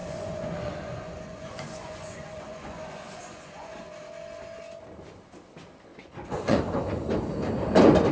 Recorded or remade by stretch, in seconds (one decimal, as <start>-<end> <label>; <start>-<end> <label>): 0.0-3.8 remade; 3.8-5.9 recorded; 5.9-6.6 remade; 6.6-8.1 recorded